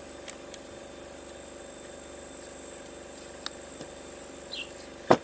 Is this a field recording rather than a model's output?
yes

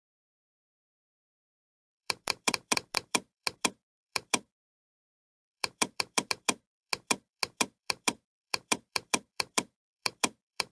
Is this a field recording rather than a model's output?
no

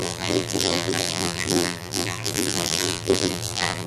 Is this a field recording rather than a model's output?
no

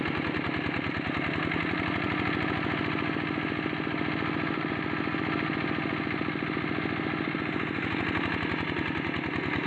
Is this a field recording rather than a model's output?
yes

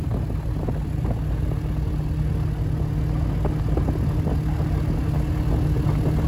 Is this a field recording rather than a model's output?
yes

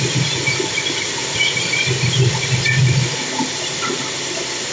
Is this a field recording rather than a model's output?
yes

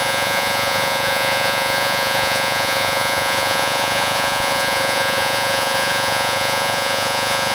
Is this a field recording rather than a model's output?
no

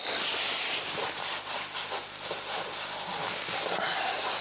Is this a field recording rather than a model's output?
yes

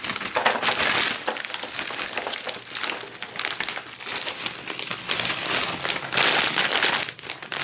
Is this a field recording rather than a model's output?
yes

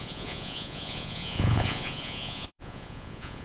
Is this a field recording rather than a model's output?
no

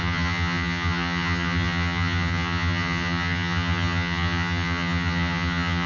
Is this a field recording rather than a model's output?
no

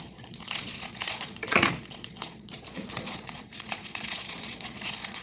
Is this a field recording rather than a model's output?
no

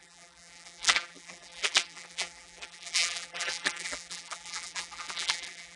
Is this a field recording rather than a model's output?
no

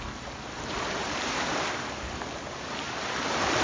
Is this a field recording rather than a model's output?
yes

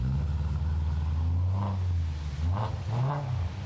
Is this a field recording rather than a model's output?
yes